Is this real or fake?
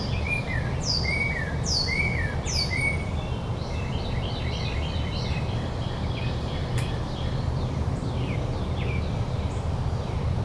fake